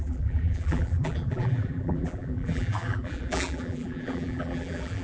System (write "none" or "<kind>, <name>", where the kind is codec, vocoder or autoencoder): vocoder, BigVGAN v2